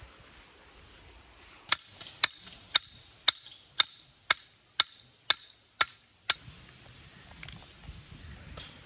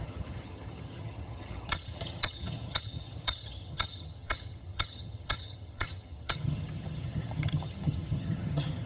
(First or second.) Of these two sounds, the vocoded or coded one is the second